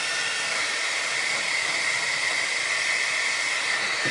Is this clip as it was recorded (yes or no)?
yes